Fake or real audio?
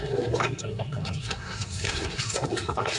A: fake